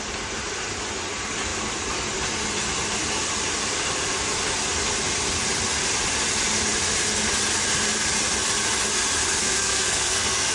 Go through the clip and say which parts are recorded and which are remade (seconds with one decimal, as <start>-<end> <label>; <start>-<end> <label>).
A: 0.0-9.4 recorded; 9.4-10.5 remade